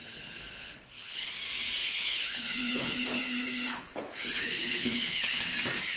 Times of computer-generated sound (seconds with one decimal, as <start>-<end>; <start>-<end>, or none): 0.0-1.3; 1.8-5.4

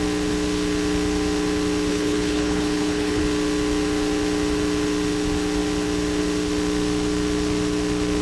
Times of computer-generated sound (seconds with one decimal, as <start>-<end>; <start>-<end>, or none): 1.9-3.2

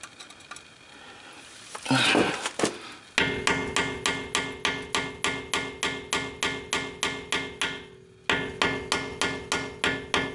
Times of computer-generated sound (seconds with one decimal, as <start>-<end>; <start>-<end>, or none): none

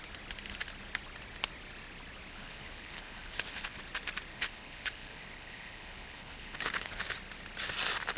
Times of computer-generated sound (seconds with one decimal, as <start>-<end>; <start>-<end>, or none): 2.3-3.8; 4.3-7.0